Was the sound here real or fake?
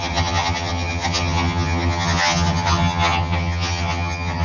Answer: fake